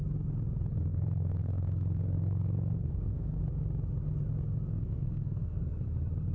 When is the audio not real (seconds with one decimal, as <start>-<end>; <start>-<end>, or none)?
0.9-3.4; 4.7-5.6